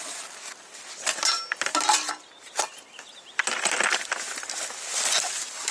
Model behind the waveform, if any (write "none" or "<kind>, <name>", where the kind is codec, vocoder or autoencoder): none